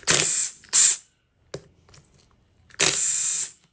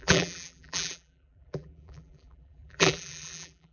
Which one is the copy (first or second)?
second